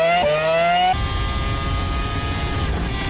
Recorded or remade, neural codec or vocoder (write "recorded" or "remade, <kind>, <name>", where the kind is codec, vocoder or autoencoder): recorded